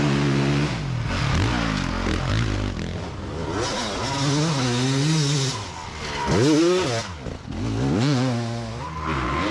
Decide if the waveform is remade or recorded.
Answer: recorded